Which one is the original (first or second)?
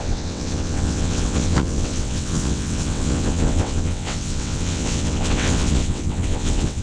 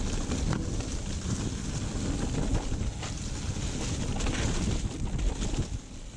second